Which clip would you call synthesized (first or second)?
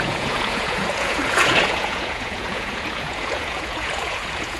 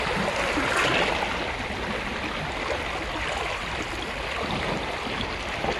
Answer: first